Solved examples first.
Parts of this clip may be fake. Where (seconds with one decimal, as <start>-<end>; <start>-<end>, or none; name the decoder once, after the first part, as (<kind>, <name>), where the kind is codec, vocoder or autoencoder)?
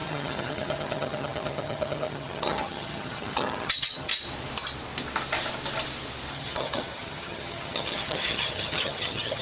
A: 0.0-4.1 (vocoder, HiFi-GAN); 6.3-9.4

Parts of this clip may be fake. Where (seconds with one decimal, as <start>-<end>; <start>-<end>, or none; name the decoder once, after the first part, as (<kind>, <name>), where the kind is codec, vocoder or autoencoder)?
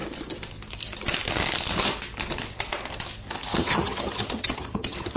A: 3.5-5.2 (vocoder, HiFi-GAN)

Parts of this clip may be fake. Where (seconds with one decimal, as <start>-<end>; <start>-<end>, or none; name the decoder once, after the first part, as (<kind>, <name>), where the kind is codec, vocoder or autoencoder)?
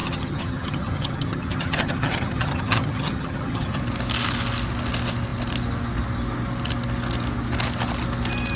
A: 0.0-3.8 (vocoder, HiFi-GAN)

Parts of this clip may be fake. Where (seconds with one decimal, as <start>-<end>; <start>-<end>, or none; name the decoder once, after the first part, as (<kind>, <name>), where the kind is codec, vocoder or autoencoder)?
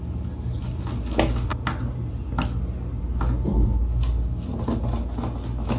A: none